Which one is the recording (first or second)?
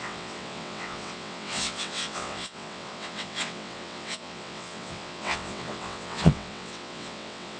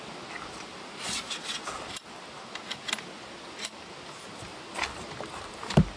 second